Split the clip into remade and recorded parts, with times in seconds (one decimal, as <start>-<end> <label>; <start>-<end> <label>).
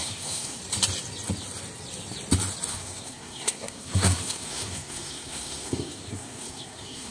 0.0-0.6 remade; 0.6-2.7 recorded; 2.7-7.1 remade